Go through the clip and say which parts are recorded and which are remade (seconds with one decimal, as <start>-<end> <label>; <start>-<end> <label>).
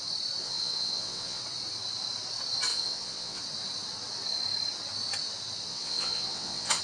0.0-0.4 recorded; 0.4-1.4 remade; 1.4-2.7 recorded; 2.7-3.4 remade; 3.4-5.7 recorded; 5.7-6.8 remade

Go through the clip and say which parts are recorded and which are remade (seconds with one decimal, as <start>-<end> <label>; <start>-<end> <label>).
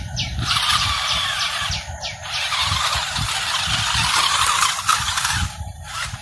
0.0-4.9 recorded; 4.9-6.2 remade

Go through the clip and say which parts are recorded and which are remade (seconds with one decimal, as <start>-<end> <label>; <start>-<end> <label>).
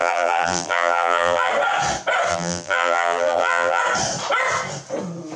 0.0-1.5 remade; 1.5-2.3 recorded; 2.3-3.8 remade; 3.8-5.4 recorded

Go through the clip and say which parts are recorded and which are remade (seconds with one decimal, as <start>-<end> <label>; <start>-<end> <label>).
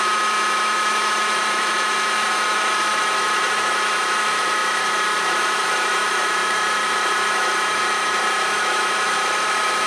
0.0-9.9 remade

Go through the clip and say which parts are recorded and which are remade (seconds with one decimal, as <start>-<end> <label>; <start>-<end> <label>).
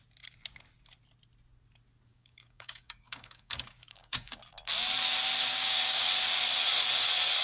0.0-2.1 recorded; 2.1-4.4 remade; 4.4-5.5 recorded; 5.5-6.1 remade; 6.1-7.4 recorded